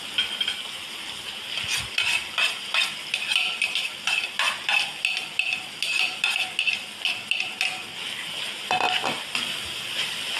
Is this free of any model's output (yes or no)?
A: yes